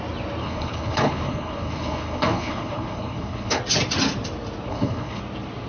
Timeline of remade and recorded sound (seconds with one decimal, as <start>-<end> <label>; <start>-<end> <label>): 0.0-0.4 recorded; 0.4-3.6 remade; 3.6-4.7 recorded; 4.7-5.2 remade; 5.2-5.7 recorded